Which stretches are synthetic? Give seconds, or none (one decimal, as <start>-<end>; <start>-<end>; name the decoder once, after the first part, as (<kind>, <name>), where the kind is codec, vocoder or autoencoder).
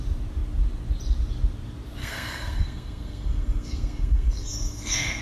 2.0-5.2 (codec, SNAC)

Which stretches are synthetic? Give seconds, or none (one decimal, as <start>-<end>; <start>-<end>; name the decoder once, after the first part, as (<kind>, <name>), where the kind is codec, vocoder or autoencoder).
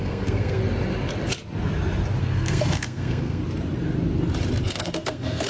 0.0-0.6 (codec, SNAC); 2.2-3.4; 4.6-5.5